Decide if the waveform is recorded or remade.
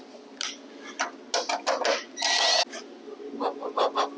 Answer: recorded